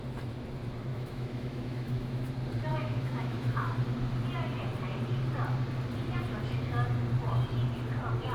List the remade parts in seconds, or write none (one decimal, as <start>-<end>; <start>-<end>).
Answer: 0.9-2.3; 2.7-3.7

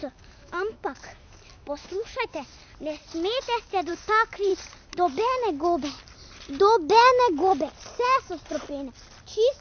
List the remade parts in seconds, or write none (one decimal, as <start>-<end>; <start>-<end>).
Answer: 0.0-2.6; 3.9-4.5; 9.2-9.6

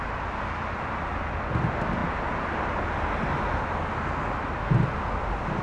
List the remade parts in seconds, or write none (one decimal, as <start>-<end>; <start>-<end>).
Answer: none

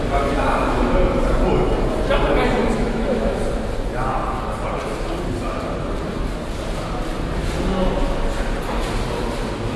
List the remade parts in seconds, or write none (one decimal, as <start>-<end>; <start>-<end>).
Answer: 2.6-3.4

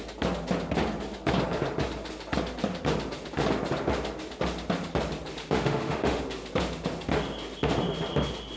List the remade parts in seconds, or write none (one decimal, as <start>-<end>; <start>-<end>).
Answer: 5.4-6.2

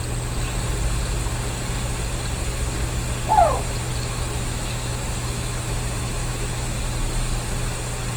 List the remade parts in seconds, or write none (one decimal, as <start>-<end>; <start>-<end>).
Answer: 3.9-5.7; 6.2-6.8

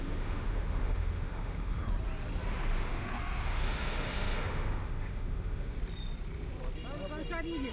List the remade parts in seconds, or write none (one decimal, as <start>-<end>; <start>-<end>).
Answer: 0.0-1.9; 2.9-5.8